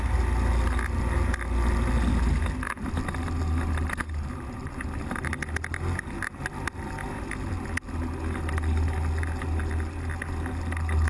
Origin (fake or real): real